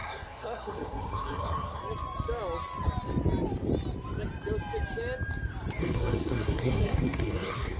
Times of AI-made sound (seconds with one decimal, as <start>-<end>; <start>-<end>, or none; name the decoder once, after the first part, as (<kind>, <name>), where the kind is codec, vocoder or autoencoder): 0.0-1.8 (codec, SNAC); 5.8-7.8